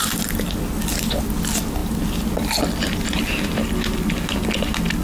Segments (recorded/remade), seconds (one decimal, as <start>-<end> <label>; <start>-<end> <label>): 0.0-5.0 recorded